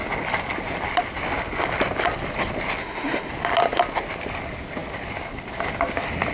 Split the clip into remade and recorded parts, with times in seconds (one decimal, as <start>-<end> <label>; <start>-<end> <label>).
0.0-2.8 recorded; 2.8-3.3 remade; 3.3-6.3 recorded